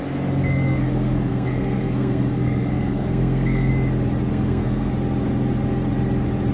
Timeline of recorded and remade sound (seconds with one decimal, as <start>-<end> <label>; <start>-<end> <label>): 0.0-0.5 recorded; 0.5-3.7 remade; 3.7-4.3 recorded; 4.3-4.9 remade; 4.9-6.5 recorded